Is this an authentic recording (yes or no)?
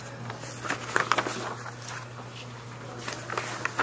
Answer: yes